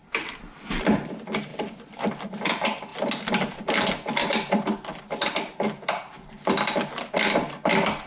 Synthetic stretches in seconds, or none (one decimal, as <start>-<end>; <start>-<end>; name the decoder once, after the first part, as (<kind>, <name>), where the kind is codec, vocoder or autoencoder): none